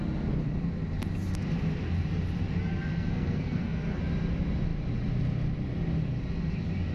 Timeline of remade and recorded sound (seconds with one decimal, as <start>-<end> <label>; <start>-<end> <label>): 0.0-2.7 recorded; 2.7-4.0 remade; 4.0-6.9 recorded